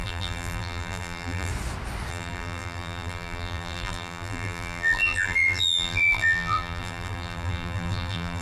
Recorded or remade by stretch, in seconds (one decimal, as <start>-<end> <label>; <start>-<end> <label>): 0.0-1.5 remade; 1.5-2.1 recorded; 2.1-8.4 remade